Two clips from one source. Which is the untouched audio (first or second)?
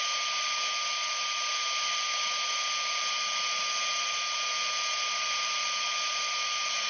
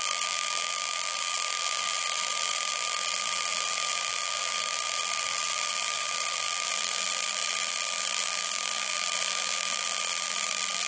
first